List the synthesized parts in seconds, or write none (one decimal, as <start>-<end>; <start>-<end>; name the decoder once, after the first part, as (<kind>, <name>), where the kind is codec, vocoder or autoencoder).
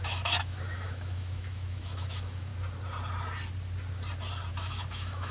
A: 0.0-2.5 (autoencoder, DAC-VAE); 4.5-5.3